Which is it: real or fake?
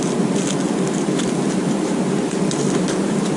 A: real